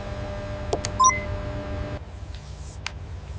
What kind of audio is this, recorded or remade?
recorded